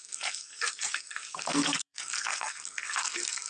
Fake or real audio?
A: fake